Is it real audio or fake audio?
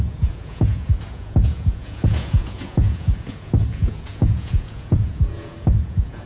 fake